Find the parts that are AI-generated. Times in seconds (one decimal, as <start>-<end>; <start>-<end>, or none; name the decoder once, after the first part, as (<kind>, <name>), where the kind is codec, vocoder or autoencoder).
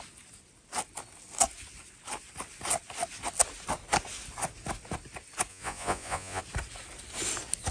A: 5.5-6.4 (vocoder, Vocos)